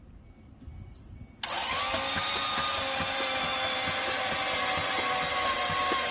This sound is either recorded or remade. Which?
recorded